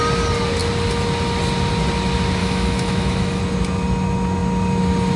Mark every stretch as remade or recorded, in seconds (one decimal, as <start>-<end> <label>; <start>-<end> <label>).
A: 0.0-2.4 recorded; 2.4-3.4 remade; 3.4-5.2 recorded